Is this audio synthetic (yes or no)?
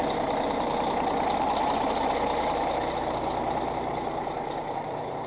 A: no